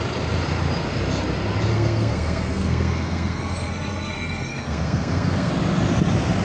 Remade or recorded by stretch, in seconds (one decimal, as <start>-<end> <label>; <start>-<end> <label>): 0.0-1.7 recorded; 1.7-5.5 remade; 5.5-6.4 recorded

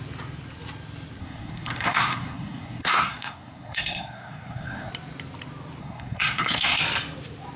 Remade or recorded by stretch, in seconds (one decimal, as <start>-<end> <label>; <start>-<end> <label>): 0.0-1.2 recorded; 1.2-4.9 remade; 4.9-5.8 recorded; 5.8-6.8 remade; 6.8-7.6 recorded

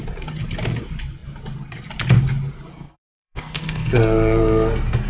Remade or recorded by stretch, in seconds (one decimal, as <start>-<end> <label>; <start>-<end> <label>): 0.0-2.7 recorded; 2.7-5.1 remade

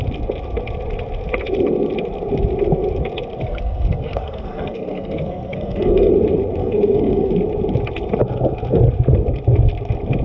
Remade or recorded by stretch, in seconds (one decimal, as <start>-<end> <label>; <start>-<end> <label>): 0.0-3.4 recorded; 3.4-6.1 remade; 6.1-6.6 recorded; 6.6-7.3 remade; 7.3-10.2 recorded

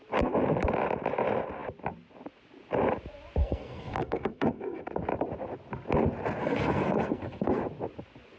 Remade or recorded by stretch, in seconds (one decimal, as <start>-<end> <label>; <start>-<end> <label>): 0.0-3.4 recorded; 3.4-4.8 remade; 4.8-6.4 recorded; 6.4-7.6 remade; 7.6-8.4 recorded

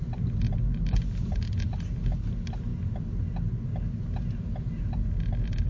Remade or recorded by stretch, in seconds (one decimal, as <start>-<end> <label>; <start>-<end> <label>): 0.0-5.7 recorded

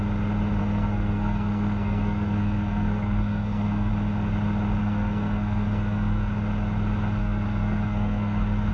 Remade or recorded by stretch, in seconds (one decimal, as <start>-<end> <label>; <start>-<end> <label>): 0.0-0.6 recorded; 0.6-3.9 remade; 3.9-4.8 recorded; 4.8-6.3 remade; 6.3-7.2 recorded; 7.2-8.7 remade

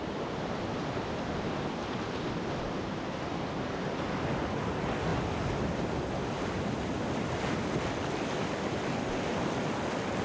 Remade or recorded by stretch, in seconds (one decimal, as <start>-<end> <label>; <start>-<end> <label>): 0.0-10.2 recorded